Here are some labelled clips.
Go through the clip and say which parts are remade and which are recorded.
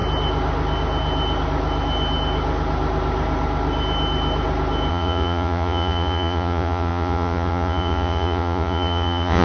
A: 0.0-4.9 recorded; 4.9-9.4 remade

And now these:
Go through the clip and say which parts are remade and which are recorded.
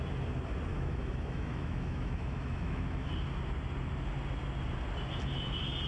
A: 0.0-0.7 recorded; 0.7-3.1 remade; 3.1-5.9 recorded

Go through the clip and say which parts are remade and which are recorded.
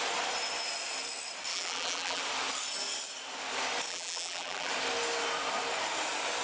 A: 0.0-1.5 recorded; 1.5-2.2 remade; 2.2-3.9 recorded; 3.9-4.7 remade; 4.7-6.4 recorded